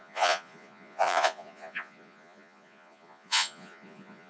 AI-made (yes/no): yes